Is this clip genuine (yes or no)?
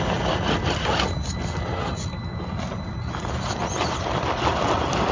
yes